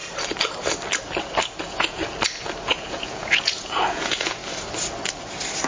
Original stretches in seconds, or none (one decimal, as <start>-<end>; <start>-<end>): 0.0-1.6; 2.0-2.7; 4.4-5.7